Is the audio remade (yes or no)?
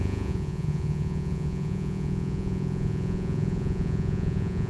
yes